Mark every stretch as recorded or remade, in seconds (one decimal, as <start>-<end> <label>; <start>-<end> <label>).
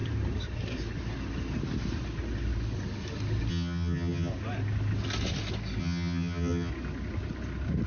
0.0-3.5 recorded; 3.5-4.3 remade; 4.3-5.8 recorded; 5.8-6.7 remade; 6.7-7.9 recorded